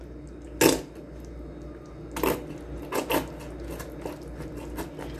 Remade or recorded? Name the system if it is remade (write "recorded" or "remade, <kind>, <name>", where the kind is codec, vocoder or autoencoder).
recorded